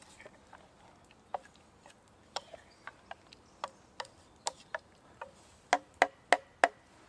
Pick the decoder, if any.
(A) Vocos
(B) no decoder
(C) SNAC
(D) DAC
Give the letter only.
B